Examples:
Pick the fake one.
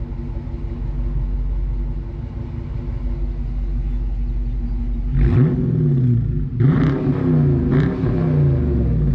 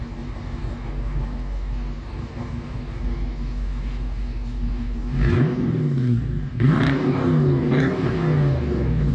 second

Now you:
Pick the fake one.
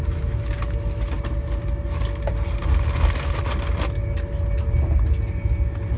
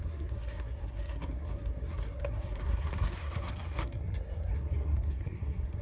second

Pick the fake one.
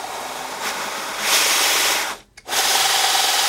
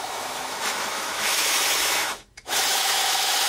second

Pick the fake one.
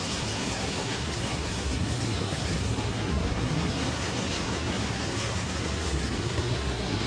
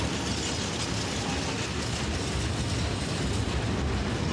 first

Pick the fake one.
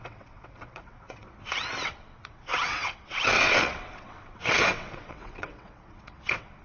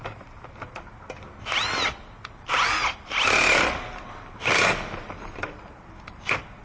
first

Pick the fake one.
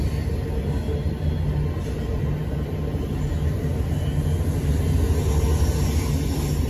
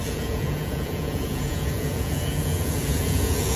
second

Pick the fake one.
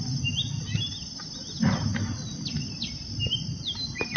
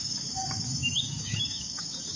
second